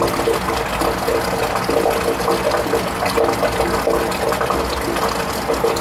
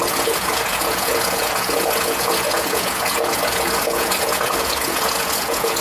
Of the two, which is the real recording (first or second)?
first